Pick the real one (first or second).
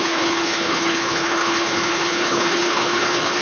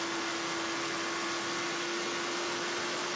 second